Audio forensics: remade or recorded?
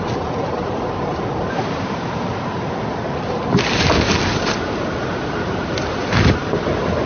recorded